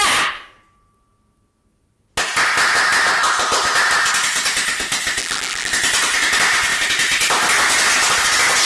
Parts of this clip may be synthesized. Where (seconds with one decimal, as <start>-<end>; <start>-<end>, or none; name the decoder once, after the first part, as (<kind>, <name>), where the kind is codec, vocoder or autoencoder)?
5.2-5.7 (vocoder, BigVGAN v2)